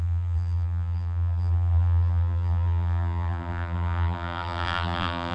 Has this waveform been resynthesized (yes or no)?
yes